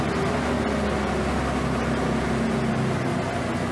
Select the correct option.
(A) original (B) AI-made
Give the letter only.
A